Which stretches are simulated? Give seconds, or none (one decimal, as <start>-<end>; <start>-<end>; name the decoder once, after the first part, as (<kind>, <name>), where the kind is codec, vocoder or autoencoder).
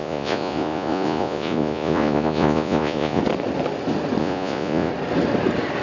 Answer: 0.0-3.2 (vocoder, Vocos); 4.2-4.9